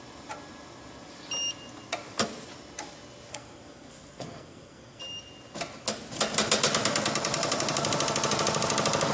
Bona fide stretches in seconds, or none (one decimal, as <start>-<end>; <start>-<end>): 0.0-3.3; 5.0-9.1